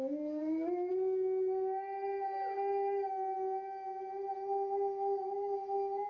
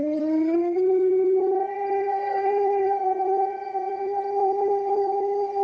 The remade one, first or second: second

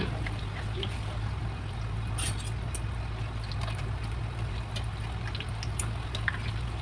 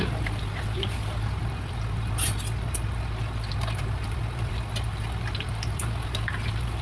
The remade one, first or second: second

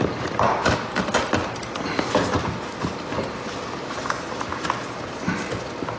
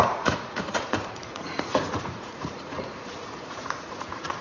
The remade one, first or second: second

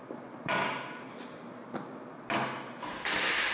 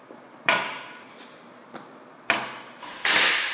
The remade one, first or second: second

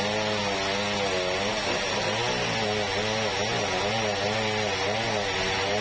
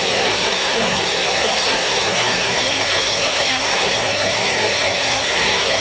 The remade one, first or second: second